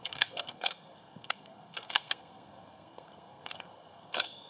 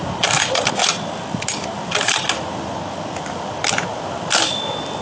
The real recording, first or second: second